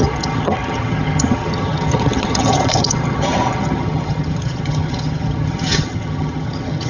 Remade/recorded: remade